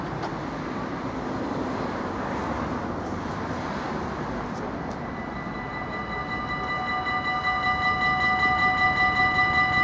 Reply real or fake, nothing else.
real